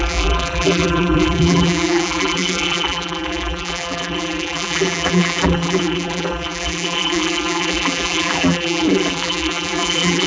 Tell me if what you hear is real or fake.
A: fake